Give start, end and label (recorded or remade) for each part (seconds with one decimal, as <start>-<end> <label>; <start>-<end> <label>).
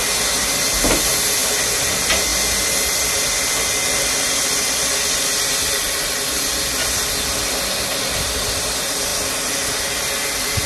0.0-10.7 recorded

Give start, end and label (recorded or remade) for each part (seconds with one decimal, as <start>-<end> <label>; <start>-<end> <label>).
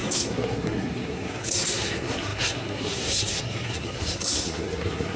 0.0-5.2 remade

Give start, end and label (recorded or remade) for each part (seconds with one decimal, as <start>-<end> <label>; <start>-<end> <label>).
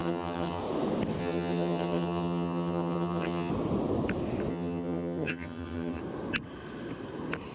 0.0-0.6 remade; 0.6-1.2 recorded; 1.2-3.5 remade; 3.5-4.5 recorded; 4.5-6.0 remade; 6.0-7.5 recorded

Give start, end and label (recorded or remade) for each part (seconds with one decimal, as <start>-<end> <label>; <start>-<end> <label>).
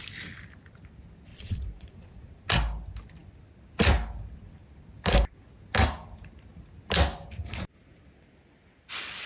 0.0-1.3 recorded; 1.3-2.3 remade; 2.3-9.3 recorded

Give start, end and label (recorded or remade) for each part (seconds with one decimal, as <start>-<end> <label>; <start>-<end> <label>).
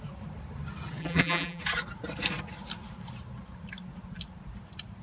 0.0-1.0 recorded; 1.0-1.6 remade; 1.6-5.0 recorded